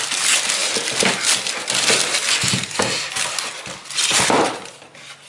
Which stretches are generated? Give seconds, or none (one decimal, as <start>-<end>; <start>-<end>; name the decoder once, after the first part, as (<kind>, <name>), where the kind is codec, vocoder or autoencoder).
none